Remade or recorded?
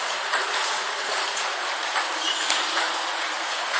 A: remade